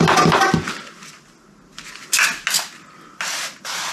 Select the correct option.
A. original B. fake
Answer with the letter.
A